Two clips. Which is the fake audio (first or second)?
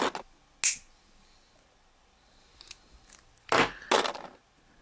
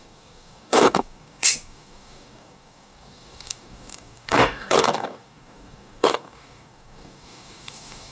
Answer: second